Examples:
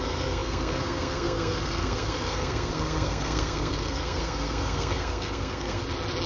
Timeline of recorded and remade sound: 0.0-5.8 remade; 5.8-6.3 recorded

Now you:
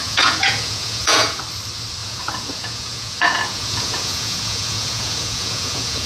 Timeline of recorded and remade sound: 0.0-1.4 remade; 1.4-2.0 recorded; 2.0-6.1 remade

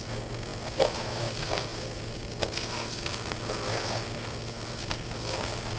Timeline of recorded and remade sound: 0.0-5.8 remade